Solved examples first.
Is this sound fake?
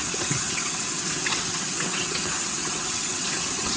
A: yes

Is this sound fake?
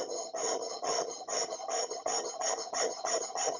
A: yes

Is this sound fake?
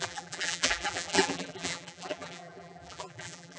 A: yes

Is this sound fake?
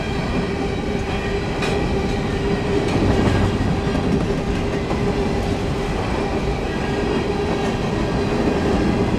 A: no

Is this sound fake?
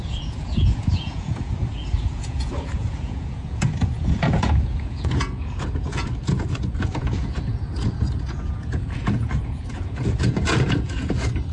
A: yes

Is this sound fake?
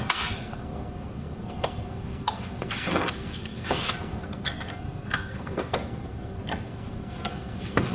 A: yes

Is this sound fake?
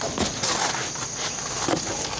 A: no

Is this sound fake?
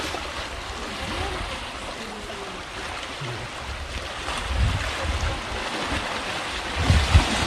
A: no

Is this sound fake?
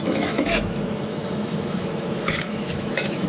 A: yes